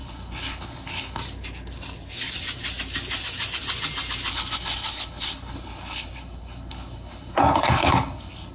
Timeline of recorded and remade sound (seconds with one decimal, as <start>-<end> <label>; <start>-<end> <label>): 0.0-1.2 remade; 1.2-4.3 recorded; 4.3-8.5 remade